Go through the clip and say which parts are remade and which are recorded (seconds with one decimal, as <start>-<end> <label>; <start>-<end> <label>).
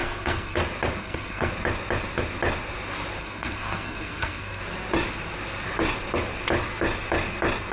0.0-0.6 remade; 0.6-1.0 recorded; 1.0-1.5 remade; 1.5-3.2 recorded; 3.2-4.6 remade; 4.6-7.7 recorded